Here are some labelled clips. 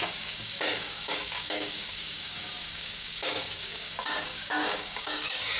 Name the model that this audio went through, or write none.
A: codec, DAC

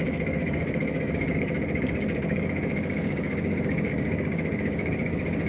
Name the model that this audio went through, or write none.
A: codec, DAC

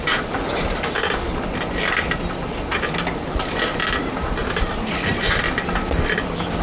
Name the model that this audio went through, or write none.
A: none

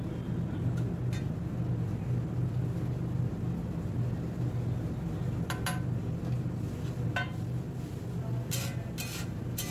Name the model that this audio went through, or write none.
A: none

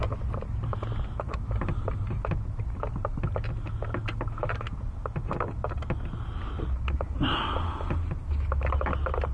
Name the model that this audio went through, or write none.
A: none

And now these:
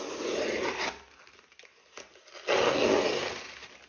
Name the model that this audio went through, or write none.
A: none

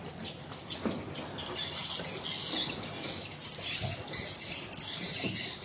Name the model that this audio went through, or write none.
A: none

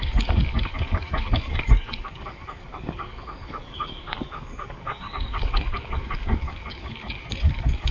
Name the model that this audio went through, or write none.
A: codec, DAC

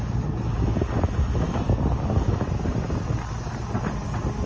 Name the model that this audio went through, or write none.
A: none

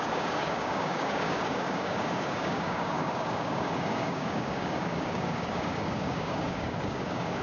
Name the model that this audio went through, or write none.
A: codec, DAC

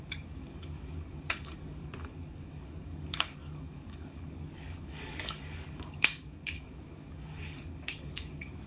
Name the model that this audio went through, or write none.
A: codec, DAC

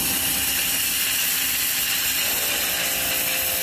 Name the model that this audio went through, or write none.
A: none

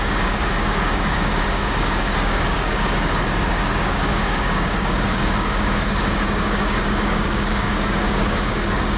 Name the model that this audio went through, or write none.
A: codec, DAC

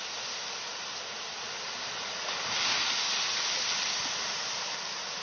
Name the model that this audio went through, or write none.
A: none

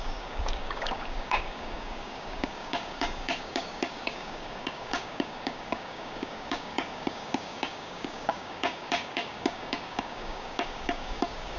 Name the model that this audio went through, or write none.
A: codec, DAC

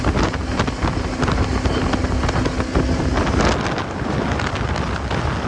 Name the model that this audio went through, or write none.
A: none